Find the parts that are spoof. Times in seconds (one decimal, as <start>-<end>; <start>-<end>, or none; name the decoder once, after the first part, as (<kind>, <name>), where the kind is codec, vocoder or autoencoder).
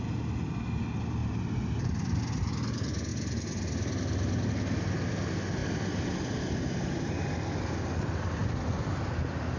1.2-2.2 (vocoder, BigVGAN v2); 8.4-9.1